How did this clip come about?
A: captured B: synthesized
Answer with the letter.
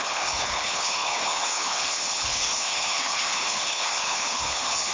B